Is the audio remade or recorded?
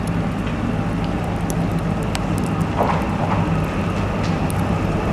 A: recorded